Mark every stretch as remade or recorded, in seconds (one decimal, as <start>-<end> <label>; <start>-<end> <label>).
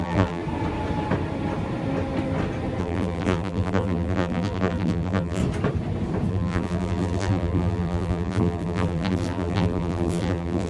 0.0-0.4 remade; 0.4-2.8 recorded; 2.8-5.4 remade; 5.4-6.3 recorded; 6.3-10.7 remade